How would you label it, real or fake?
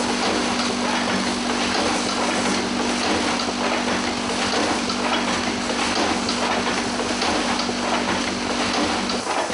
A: real